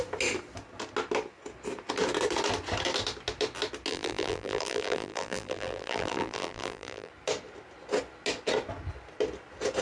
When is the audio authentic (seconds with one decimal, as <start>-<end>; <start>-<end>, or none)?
0.0-3.9; 7.1-9.8